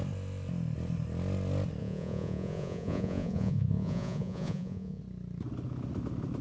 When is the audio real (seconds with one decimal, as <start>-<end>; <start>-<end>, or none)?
0.0-1.8; 5.0-6.4